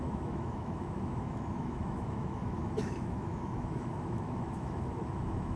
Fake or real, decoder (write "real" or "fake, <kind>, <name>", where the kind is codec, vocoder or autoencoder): fake, autoencoder, DAC-VAE